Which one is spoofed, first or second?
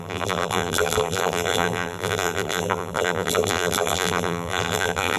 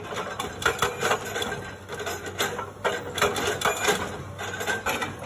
first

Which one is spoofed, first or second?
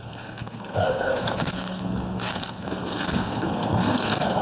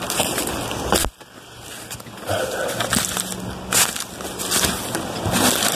first